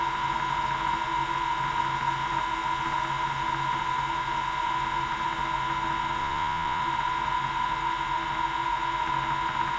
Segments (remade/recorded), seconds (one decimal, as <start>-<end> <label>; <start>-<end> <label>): 0.0-6.2 recorded; 6.2-6.8 remade; 6.8-9.8 recorded